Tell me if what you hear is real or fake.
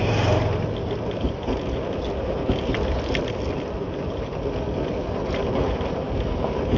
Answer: real